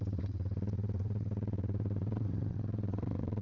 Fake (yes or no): yes